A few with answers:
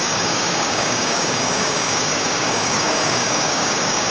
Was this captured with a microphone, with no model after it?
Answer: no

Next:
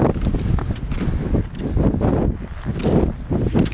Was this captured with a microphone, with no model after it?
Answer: yes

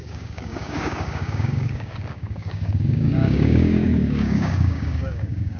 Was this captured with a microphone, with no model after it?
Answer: no